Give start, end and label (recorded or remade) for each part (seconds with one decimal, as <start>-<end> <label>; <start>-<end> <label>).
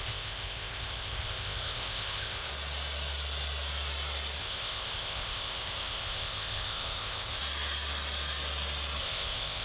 0.0-2.5 remade; 2.5-4.4 recorded; 4.4-7.4 remade; 7.4-9.0 recorded; 9.0-9.6 remade